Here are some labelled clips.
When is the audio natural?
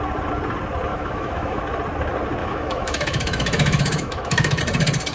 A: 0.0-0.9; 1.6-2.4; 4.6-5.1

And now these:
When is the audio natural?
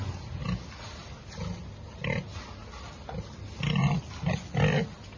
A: 0.0-5.2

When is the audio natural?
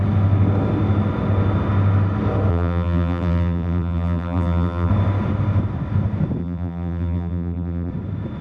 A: 0.0-2.5; 4.9-6.4; 7.9-8.4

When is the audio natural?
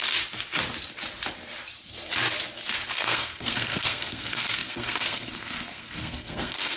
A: 0.0-2.9